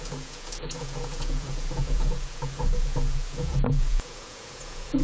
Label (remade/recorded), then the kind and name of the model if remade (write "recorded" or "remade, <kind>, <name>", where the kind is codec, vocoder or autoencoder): remade, vocoder, Vocos